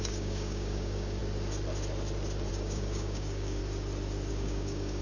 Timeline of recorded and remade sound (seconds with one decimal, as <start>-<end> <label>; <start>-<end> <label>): 0.0-1.2 remade; 1.2-2.5 recorded; 2.5-3.6 remade; 3.6-4.3 recorded; 4.3-5.0 remade